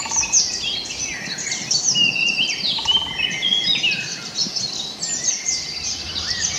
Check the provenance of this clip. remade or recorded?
recorded